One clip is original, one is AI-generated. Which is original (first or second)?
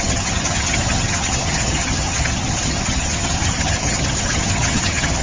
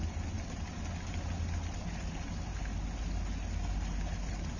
second